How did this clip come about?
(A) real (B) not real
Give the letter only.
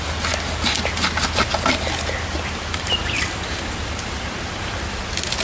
A